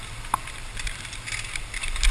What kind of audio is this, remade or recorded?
recorded